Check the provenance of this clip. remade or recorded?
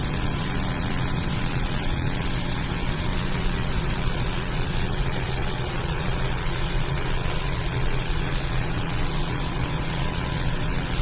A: remade